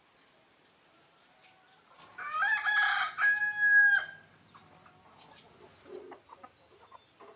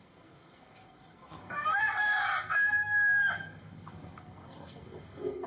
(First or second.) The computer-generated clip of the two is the second